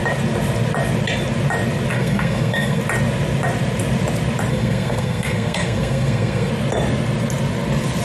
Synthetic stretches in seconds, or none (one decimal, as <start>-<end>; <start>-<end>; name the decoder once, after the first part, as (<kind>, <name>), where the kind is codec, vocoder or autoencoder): 1.9-2.8 (codec, SNAC); 4.5-6.5